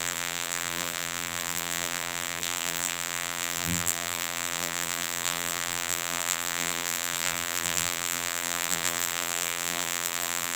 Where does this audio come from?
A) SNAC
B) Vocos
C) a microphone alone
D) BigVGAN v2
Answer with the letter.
D